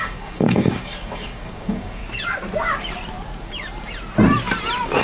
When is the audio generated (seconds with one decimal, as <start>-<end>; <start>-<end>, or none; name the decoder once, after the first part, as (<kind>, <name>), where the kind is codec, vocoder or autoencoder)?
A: 0.0-2.0 (codec, DAC)